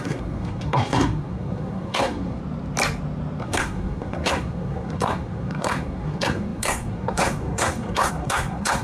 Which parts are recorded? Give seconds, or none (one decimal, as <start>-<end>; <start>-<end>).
2.4-3.4